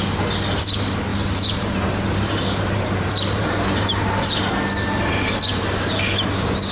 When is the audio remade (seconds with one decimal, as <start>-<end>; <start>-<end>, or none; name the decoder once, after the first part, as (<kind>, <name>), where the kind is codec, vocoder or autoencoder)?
1.1-4.4 (vocoder, BigVGAN v2)